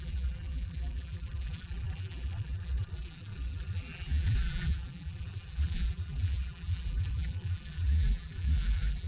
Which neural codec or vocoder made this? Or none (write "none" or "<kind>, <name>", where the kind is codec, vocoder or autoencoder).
vocoder, BigVGAN v2